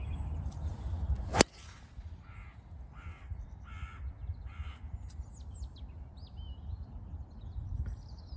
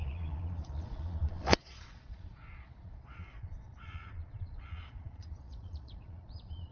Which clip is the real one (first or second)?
first